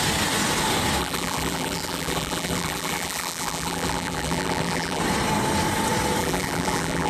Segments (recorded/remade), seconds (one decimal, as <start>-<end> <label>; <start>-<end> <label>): 0.0-1.0 recorded; 1.0-5.0 remade; 5.0-6.2 recorded; 6.2-7.1 remade